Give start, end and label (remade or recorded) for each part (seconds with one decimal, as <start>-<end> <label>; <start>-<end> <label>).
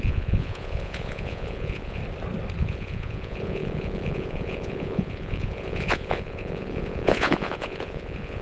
0.0-2.0 remade; 2.0-2.6 recorded; 2.6-8.4 remade